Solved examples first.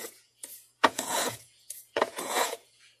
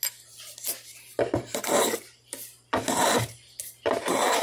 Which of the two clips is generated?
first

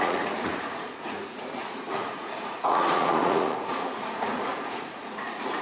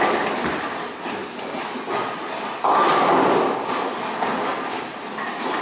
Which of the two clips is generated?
first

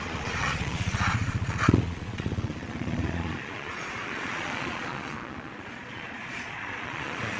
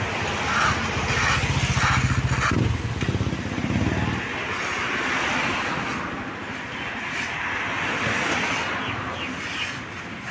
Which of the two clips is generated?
first